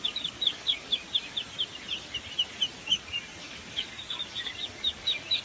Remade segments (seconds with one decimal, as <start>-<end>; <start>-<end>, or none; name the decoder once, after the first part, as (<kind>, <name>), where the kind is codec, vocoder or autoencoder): 0.0-1.0 (codec, DAC); 2.8-5.4